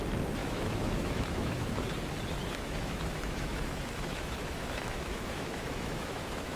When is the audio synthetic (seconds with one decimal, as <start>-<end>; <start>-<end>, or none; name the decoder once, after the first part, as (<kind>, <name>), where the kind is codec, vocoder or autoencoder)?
0.4-1.9 (autoencoder, DAC-VAE); 2.4-6.6